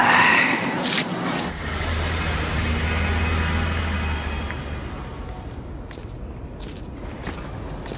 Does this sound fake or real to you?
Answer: real